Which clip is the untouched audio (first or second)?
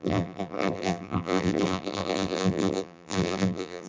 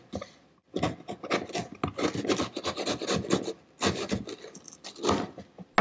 second